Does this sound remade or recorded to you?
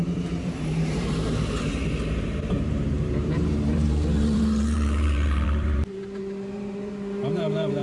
remade